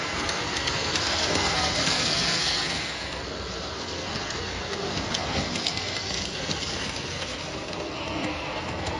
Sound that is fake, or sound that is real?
fake